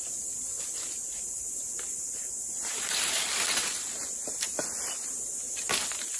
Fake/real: real